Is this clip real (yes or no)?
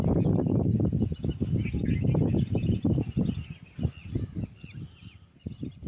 yes